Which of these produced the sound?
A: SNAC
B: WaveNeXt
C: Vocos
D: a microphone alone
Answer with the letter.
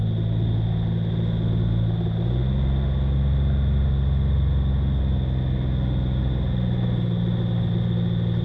D